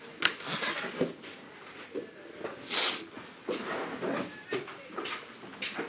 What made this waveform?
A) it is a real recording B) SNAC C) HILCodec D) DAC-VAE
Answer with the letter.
A